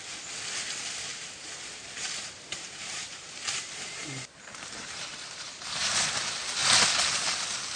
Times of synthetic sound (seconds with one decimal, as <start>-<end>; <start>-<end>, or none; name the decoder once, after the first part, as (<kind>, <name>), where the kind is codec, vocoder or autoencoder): 1.1-5.8 (vocoder, BigVGAN v2)